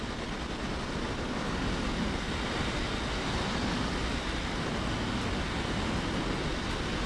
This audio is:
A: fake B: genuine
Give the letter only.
B